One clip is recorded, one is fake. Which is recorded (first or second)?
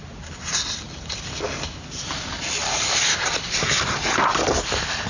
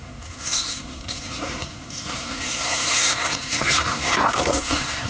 first